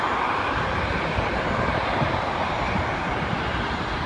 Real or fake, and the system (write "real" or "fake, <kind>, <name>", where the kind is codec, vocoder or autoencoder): real